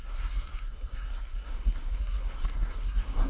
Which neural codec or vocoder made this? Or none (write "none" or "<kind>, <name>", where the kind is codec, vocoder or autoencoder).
codec, SNAC